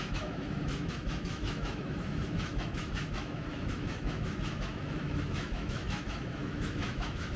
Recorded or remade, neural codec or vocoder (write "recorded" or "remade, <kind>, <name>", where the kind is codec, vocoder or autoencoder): remade, autoencoder, DAC-VAE